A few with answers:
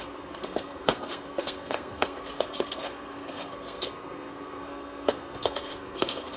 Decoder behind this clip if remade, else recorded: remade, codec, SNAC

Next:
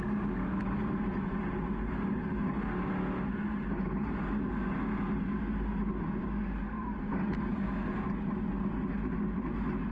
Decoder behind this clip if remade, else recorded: recorded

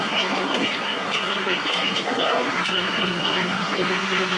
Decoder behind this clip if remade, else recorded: remade, codec, SNAC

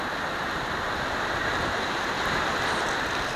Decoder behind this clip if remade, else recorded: recorded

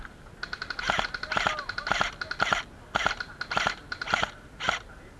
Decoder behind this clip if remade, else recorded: recorded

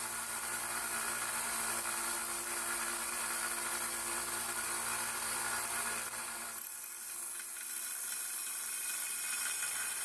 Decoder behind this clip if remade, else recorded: remade, vocoder, BigVGAN v2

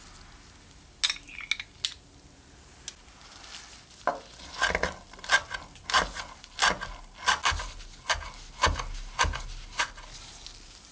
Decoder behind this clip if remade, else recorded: recorded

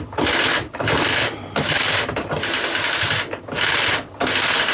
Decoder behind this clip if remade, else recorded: recorded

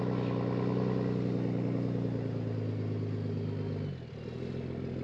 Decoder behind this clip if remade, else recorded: recorded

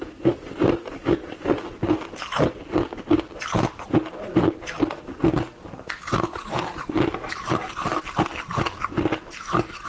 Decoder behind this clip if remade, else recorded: recorded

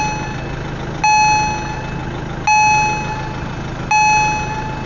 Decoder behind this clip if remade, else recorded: recorded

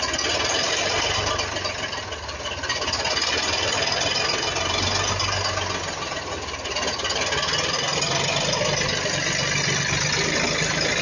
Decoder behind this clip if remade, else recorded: recorded